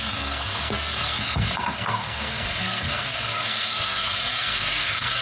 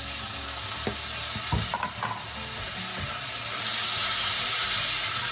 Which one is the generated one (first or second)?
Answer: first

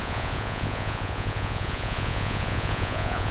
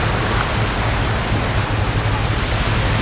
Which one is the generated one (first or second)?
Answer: first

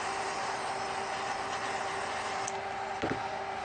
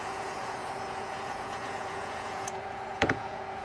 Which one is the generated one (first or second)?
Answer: second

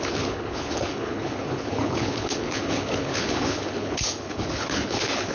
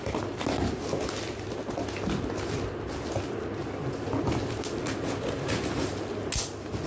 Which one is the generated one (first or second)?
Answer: first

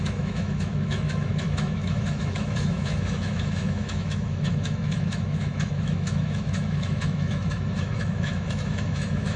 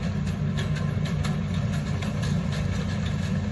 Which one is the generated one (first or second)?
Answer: first